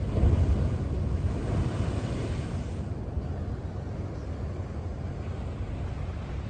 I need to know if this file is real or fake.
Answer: real